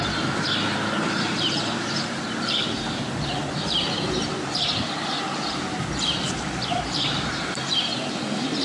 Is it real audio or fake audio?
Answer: fake